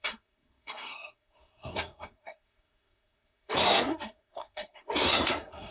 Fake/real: fake